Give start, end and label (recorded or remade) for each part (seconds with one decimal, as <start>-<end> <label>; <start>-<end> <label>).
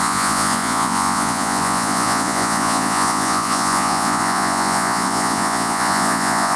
0.0-6.6 remade